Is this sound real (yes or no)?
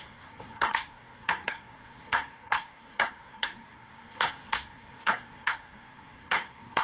no